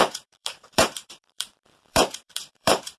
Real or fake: fake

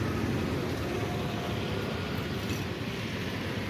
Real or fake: real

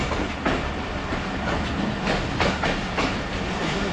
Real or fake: real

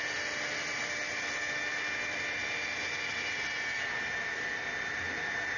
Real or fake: real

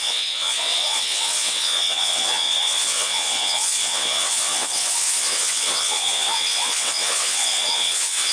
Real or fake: fake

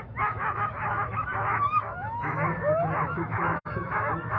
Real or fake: fake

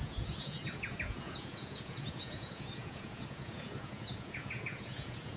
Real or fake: fake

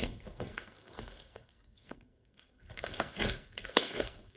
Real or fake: fake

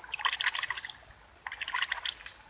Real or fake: real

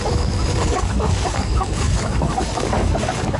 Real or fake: fake